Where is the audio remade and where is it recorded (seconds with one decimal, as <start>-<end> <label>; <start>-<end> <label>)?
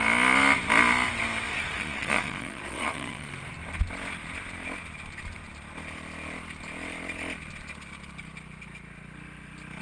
0.0-1.5 recorded; 1.5-3.3 remade; 3.3-9.8 recorded